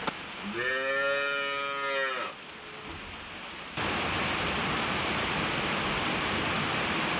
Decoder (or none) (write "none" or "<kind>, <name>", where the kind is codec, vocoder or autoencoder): none